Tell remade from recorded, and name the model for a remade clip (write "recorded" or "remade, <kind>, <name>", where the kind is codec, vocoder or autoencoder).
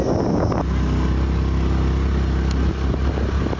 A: recorded